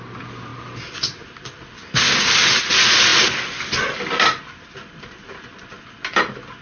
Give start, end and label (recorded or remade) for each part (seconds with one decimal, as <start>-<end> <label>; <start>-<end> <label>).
0.0-6.6 recorded